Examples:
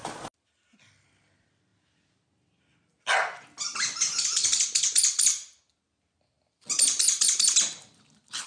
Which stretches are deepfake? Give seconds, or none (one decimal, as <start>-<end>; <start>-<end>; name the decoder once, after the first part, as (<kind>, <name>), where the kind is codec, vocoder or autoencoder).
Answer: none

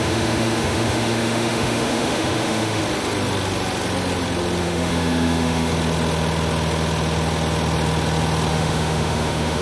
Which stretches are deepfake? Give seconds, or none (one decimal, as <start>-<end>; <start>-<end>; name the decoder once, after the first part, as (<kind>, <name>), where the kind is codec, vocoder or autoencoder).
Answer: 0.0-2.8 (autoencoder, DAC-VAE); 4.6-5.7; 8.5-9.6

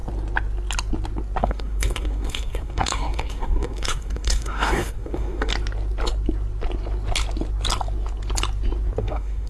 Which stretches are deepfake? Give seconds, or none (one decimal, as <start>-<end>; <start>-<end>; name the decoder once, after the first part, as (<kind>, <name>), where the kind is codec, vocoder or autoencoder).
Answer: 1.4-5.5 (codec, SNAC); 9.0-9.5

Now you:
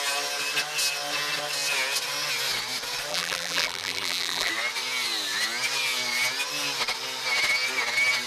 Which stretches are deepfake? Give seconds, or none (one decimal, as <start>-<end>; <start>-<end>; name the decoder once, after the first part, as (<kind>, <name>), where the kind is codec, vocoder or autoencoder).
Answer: 3.1-4.5 (vocoder, BigVGAN v2)

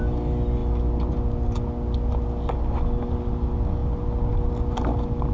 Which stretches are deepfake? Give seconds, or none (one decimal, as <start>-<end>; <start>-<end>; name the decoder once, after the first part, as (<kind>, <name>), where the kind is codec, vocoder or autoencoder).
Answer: none

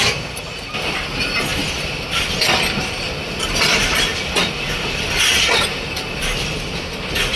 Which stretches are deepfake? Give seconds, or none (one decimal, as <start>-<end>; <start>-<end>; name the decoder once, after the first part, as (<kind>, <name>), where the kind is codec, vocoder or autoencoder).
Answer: none